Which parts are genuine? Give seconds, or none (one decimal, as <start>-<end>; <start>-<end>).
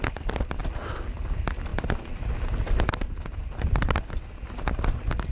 0.0-5.3